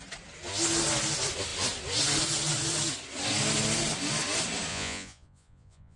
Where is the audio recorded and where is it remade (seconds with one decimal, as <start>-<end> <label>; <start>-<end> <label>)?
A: 0.0-4.7 recorded; 4.7-6.0 remade